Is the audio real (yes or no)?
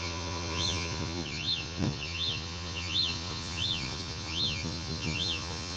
no